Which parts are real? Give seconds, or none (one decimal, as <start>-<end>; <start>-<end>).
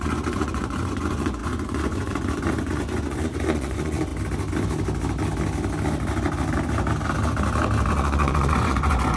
4.1-7.9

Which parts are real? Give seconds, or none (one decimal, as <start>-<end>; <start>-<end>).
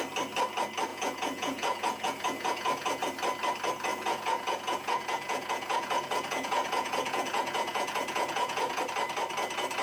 0.0-0.9; 3.0-3.9; 8.8-9.8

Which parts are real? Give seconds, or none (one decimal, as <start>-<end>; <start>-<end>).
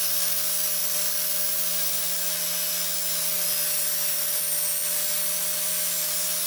0.0-6.5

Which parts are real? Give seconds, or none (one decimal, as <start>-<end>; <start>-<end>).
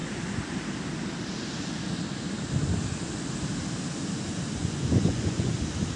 0.0-4.6; 5.5-6.0